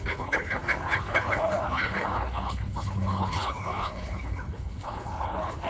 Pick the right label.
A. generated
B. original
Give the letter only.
A